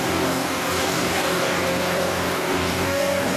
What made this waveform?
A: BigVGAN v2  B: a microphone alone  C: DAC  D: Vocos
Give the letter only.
C